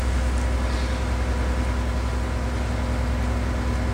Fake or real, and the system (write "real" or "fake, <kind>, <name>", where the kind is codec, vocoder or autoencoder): real